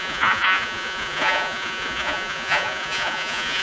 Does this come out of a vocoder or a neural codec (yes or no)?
yes